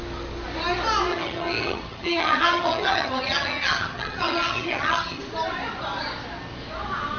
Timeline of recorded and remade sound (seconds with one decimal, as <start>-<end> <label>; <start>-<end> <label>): 0.0-1.1 recorded; 1.1-5.2 remade; 5.2-7.2 recorded